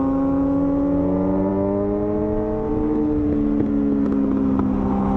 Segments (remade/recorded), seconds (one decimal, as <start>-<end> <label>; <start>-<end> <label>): 0.0-5.2 recorded